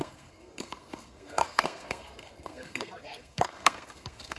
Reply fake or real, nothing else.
fake